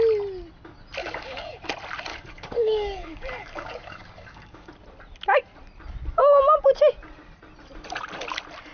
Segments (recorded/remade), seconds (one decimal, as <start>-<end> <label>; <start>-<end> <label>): 0.0-1.0 recorded; 1.0-1.6 remade; 1.6-2.1 recorded; 2.1-4.7 remade; 4.7-8.7 recorded